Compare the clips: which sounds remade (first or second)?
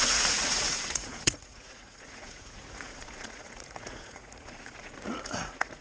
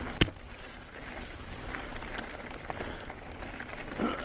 first